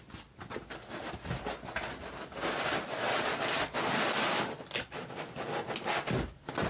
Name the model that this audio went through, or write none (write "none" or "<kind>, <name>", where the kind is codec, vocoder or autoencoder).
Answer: none